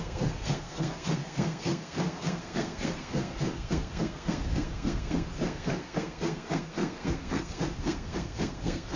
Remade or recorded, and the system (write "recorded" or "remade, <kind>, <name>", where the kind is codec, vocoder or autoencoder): remade, codec, SNAC